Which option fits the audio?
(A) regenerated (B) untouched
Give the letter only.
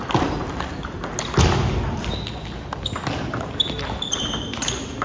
B